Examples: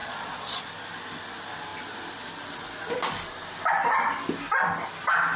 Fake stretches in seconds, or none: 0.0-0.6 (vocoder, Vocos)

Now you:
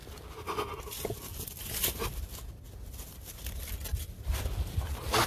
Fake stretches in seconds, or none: none

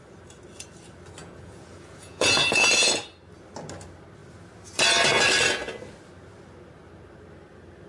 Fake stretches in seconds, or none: 1.2-2.9 (vocoder, Vocos)

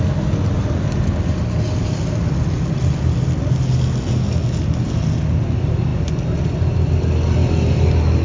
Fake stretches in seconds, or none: none

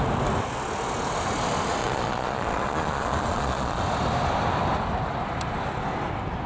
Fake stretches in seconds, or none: 1.8-3.8 (vocoder, Vocos)

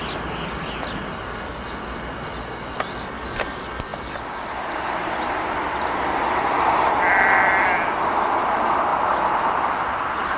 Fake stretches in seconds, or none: none

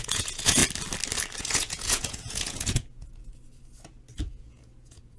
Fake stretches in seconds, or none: 0.0-0.6 (vocoder, Vocos); 1.4-3.3; 4.3-5.2